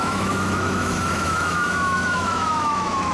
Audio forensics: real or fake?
fake